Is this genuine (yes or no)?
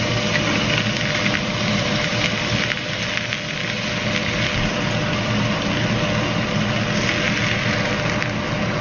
yes